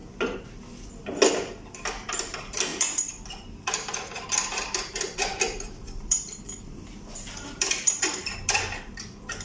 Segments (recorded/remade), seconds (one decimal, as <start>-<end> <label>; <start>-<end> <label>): 0.0-1.3 recorded; 1.3-9.4 remade